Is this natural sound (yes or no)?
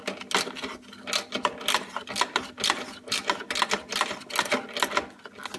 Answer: yes